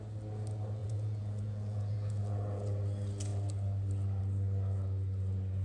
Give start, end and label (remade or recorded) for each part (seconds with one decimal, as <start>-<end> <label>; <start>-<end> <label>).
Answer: 0.0-0.8 recorded; 0.8-2.8 remade; 2.8-5.6 recorded